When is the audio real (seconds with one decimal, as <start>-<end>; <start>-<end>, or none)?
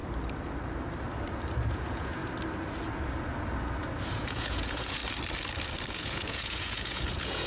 0.0-1.7; 2.2-4.2; 5.0-5.9